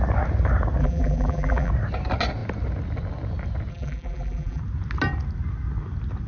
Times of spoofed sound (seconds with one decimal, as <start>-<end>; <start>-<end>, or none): 0.8-1.7; 3.7-4.6